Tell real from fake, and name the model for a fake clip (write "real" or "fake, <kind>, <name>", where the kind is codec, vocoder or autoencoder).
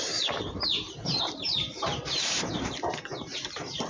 fake, vocoder, BigVGAN v2